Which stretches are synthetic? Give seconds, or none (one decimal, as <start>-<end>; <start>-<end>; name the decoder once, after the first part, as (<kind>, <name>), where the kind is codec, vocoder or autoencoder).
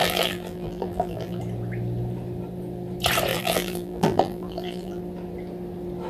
0.0-1.4 (vocoder, BigVGAN v2); 3.3-5.0